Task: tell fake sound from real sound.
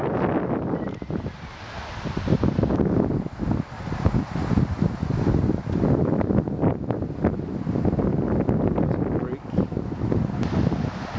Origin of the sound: real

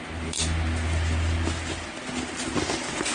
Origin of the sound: real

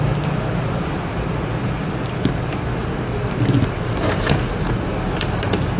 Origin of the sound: real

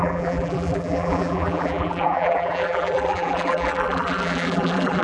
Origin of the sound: fake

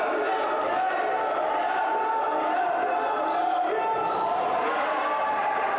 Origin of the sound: real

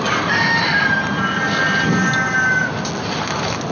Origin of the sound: real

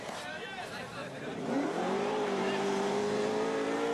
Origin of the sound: fake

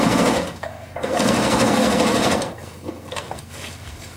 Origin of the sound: fake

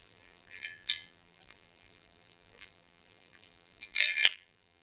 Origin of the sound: fake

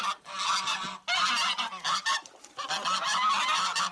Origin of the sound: real